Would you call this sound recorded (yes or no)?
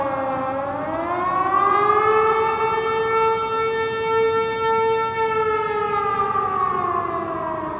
yes